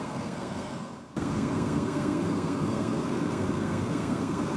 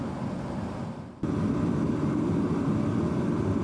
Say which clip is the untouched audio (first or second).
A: second